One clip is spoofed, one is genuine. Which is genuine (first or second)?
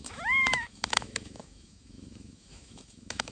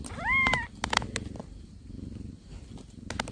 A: second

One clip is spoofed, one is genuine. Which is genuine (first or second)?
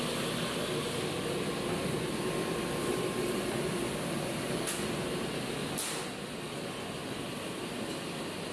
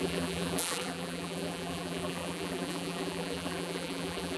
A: first